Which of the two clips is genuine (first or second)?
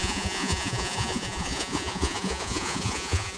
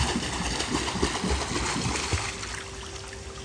second